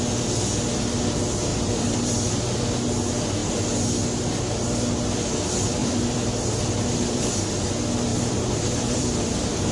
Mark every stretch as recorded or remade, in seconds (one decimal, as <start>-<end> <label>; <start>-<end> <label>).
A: 0.0-1.5 recorded; 1.5-2.3 remade; 2.3-5.8 recorded; 5.8-7.3 remade; 7.3-8.1 recorded; 8.1-9.7 remade